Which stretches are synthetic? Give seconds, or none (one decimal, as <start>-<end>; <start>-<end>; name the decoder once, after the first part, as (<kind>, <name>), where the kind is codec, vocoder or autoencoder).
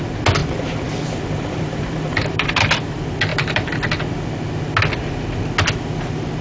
0.4-2.6 (vocoder, BigVGAN v2); 3.3-3.9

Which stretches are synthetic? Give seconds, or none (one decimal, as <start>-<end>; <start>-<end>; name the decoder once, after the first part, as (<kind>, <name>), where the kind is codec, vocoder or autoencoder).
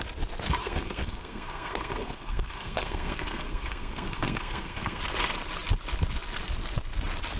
0.6-5.0 (codec, SNAC)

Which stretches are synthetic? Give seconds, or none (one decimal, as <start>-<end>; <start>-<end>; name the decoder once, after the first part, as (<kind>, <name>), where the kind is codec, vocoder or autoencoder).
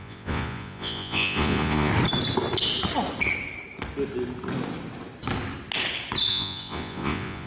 0.0-1.9 (vocoder, Vocos); 6.3-7.5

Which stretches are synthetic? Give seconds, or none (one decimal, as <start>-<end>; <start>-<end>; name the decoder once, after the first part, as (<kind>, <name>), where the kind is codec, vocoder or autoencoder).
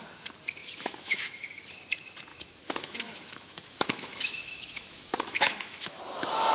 0.6-1.7 (autoencoder, DAC-VAE); 2.3-6.0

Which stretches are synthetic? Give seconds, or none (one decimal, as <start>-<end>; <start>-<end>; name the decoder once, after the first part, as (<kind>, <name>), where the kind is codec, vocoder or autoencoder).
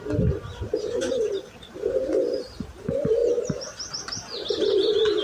none